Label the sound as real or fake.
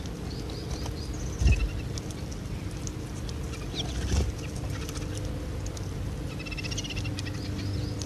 real